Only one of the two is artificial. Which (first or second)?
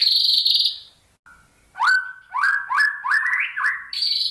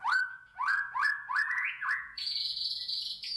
second